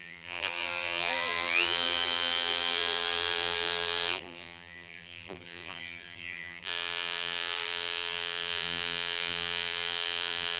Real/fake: fake